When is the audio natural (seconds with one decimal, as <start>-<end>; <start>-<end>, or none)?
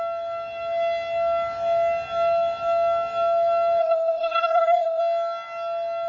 0.0-3.8; 5.0-6.1